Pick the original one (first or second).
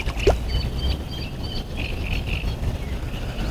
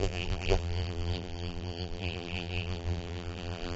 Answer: first